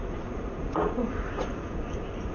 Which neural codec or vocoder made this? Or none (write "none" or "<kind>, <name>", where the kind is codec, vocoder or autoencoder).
vocoder, Vocos